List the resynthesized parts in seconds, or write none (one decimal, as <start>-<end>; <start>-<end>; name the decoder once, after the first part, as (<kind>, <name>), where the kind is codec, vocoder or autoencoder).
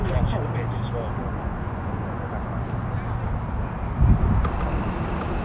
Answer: 1.2-2.3 (vocoder, Vocos)